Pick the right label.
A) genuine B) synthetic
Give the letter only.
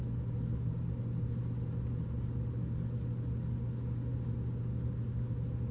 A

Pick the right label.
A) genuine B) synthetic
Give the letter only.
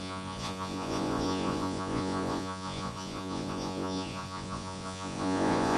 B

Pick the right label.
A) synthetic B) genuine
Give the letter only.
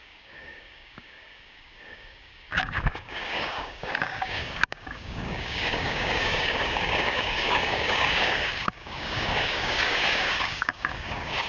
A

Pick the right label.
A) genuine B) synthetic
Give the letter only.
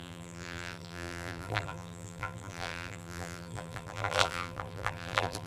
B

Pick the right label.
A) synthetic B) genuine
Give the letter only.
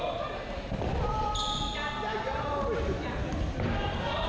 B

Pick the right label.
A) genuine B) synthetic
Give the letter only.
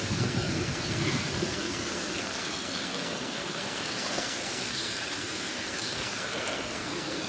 B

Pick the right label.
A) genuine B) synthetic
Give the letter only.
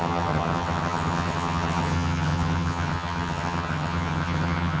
B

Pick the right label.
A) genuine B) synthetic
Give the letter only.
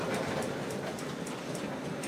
B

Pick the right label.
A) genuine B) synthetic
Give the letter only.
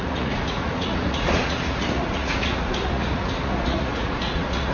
B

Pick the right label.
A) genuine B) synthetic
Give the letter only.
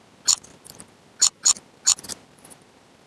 A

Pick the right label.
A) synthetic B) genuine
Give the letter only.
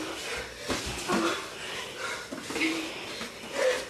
B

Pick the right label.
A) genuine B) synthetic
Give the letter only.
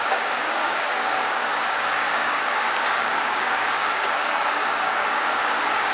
B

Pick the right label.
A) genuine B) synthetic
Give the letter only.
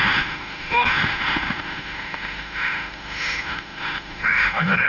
B